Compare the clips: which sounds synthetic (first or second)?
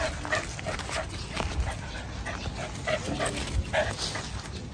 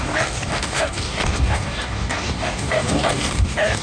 second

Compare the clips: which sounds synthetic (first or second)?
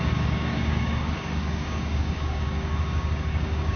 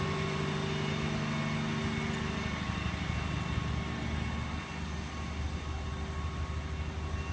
first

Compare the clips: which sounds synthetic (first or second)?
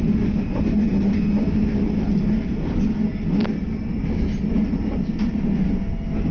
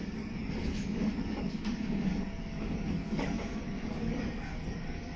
second